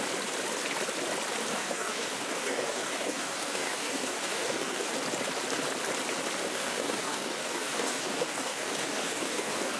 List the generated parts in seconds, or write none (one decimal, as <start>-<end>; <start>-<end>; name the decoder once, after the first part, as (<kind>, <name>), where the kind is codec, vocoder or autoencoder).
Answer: 1.5-4.9 (codec, DAC); 6.4-9.8